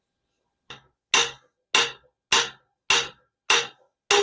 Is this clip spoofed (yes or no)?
no